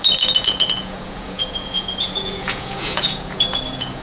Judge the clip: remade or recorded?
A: remade